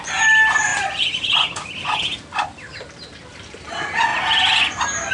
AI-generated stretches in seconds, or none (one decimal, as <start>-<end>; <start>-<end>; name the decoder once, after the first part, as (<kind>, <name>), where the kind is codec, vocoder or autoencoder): none